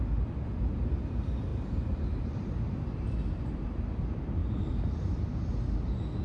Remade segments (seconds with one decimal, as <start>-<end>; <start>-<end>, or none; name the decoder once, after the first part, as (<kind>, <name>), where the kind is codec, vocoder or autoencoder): 1.5-2.5 (vocoder, BigVGAN v2); 4.4-5.1